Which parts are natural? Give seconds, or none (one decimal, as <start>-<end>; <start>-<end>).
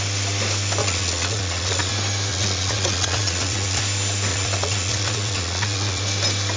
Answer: 0.0-0.8; 1.9-2.3; 3.8-4.3; 6.0-6.6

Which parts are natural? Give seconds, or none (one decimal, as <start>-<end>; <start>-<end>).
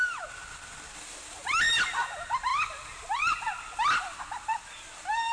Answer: 0.0-5.3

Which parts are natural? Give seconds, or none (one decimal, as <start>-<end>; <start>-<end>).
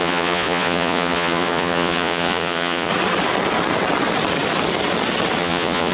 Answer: 2.9-5.4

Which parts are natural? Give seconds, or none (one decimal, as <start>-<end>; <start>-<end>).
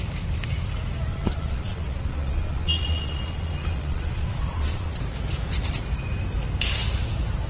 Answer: 0.0-1.1; 5.0-7.5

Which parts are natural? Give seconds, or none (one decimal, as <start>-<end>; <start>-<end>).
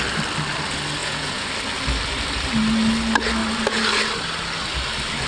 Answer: 0.0-1.0; 1.5-5.3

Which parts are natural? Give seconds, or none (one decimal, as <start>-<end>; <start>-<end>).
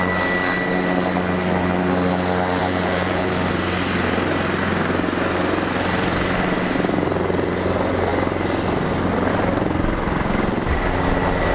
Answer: 0.0-2.6; 3.3-11.5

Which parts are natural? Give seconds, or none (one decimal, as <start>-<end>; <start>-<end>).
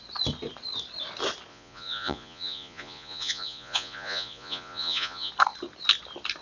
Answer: 0.0-1.5; 5.3-6.4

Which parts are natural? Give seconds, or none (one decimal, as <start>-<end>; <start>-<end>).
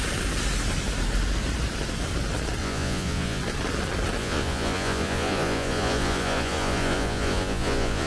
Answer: 0.0-2.6; 3.4-4.2